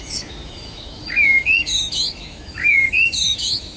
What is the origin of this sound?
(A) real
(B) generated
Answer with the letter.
B